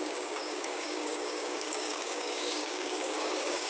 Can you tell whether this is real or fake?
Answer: fake